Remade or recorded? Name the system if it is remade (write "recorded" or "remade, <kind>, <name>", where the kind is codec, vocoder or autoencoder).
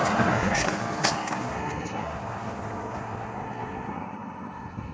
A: remade, codec, SNAC